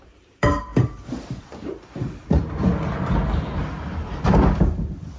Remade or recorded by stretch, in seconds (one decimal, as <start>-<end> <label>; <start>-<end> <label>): 0.0-2.7 remade; 2.7-3.6 recorded; 3.6-5.2 remade